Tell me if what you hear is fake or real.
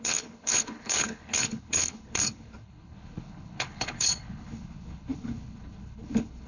fake